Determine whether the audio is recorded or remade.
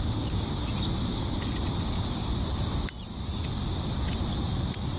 recorded